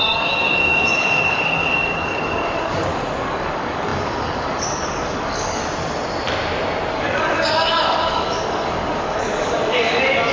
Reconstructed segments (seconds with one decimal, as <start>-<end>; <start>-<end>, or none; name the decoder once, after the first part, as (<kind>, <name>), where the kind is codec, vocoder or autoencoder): 0.0-5.6 (codec, DAC); 6.9-10.3